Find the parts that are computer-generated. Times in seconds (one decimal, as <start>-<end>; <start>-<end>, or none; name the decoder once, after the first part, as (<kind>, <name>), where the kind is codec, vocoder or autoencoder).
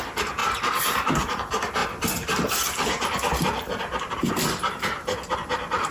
none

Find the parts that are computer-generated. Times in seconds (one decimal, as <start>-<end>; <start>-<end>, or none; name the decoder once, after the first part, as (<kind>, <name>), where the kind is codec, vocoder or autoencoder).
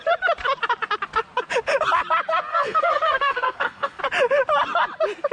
2.5-4.0 (codec, SNAC)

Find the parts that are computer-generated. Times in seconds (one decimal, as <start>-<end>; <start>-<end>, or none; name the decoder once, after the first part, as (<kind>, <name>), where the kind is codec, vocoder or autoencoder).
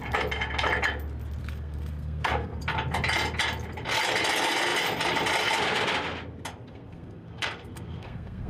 1.4-2.6 (codec, SNAC); 6.6-8.5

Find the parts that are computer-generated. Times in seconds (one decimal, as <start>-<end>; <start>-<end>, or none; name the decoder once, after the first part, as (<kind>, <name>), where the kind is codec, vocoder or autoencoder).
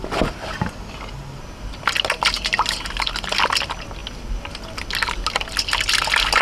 none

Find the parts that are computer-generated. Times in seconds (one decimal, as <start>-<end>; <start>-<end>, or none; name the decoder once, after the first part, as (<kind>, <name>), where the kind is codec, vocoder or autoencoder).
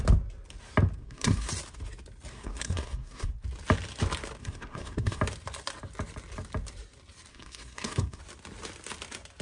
1.0-1.5 (codec, SNAC); 2.3-3.3; 4.4-5.2; 7.3-8.2